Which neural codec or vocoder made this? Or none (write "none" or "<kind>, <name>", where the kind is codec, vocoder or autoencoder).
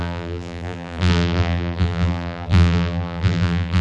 vocoder, BigVGAN v2